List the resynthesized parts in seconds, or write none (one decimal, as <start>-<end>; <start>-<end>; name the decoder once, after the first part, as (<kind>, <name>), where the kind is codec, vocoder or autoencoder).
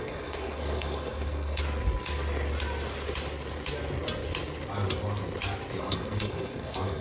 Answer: 0.0-1.6 (codec, SNAC); 5.8-7.0